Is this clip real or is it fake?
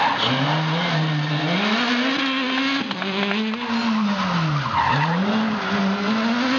real